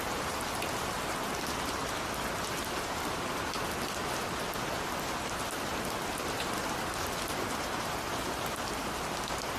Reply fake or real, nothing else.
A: real